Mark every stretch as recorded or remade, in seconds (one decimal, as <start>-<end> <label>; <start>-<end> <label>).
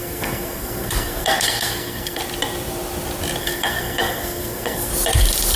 0.0-2.2 remade; 2.2-3.4 recorded; 3.4-4.9 remade; 4.9-5.6 recorded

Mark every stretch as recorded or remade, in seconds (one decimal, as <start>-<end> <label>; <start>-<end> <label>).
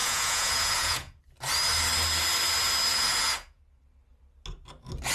0.0-1.2 remade; 1.2-2.9 recorded; 2.9-3.6 remade; 3.6-5.1 recorded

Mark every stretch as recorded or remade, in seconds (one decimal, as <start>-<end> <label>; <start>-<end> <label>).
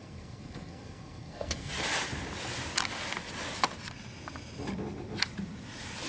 0.0-1.7 remade; 1.7-6.1 recorded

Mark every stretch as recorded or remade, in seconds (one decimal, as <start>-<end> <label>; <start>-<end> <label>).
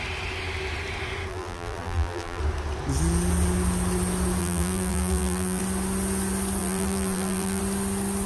0.0-1.3 recorded; 1.3-2.4 remade; 2.4-4.4 recorded; 4.4-5.6 remade; 5.6-6.6 recorded; 6.6-7.6 remade; 7.6-8.3 recorded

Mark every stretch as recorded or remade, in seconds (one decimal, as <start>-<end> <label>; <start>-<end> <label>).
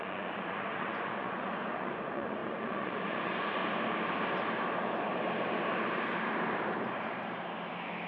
0.0-3.6 remade; 3.6-8.1 recorded